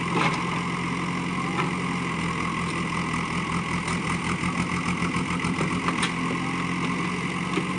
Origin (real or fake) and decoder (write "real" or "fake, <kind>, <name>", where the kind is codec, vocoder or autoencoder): real